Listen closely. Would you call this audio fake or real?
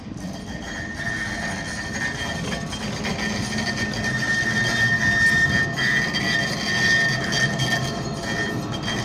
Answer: real